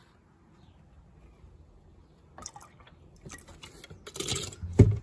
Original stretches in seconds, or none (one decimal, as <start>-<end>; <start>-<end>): 0.0-4.3

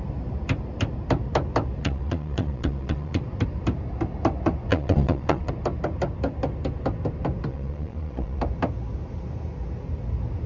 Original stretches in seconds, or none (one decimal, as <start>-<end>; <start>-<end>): 0.0-1.8; 3.2-4.7; 5.5-7.5; 8.4-10.5

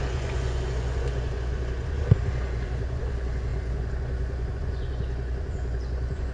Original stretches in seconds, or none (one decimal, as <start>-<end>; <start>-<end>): none

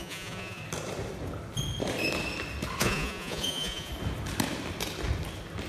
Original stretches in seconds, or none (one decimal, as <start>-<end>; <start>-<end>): 0.6-2.8; 3.9-5.7

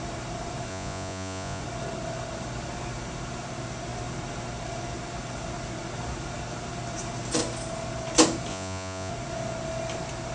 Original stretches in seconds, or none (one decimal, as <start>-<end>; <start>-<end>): 0.0-0.7; 1.6-8.5; 9.1-10.3